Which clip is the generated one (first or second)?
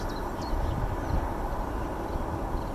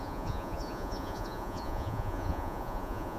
second